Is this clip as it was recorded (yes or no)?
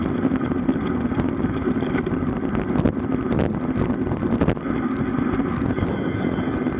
yes